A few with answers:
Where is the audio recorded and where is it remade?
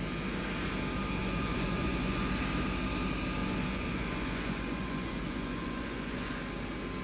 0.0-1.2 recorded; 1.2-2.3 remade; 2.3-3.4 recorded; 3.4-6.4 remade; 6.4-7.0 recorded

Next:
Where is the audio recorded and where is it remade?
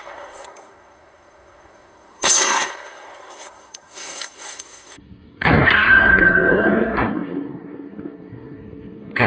0.0-9.3 remade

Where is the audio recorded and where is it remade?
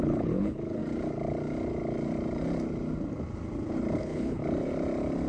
0.0-0.8 remade; 0.8-4.0 recorded; 4.0-4.4 remade; 4.4-5.3 recorded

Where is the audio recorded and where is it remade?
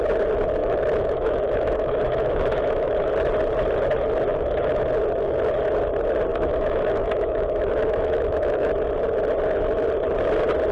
0.0-0.6 recorded; 0.6-3.1 remade; 3.1-4.3 recorded; 4.3-4.9 remade; 4.9-6.3 recorded; 6.3-8.7 remade; 8.7-10.7 recorded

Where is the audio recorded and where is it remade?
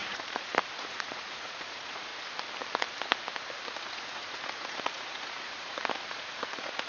0.0-2.1 remade; 2.1-3.8 recorded; 3.8-6.9 remade